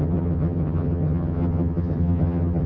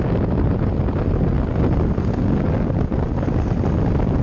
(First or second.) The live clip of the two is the second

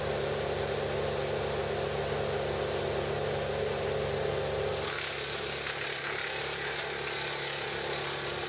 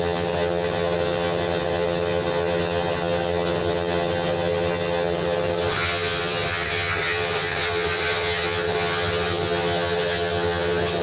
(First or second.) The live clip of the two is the first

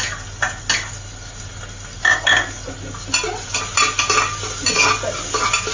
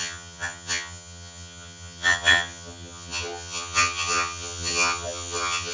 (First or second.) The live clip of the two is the first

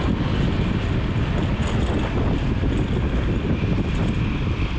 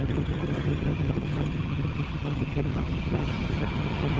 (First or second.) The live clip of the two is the first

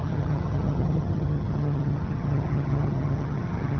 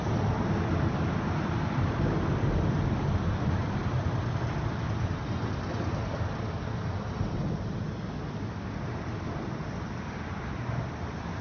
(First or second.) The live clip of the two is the second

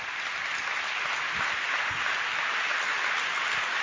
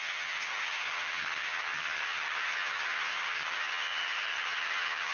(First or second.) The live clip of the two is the first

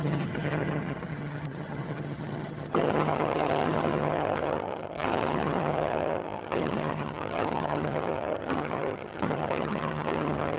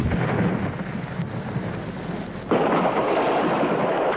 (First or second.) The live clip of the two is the second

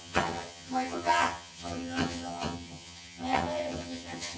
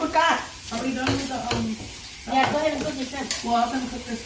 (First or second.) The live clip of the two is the second